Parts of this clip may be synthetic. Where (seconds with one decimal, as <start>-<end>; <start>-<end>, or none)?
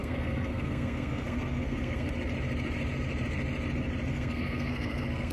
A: 0.0-2.1; 4.1-5.3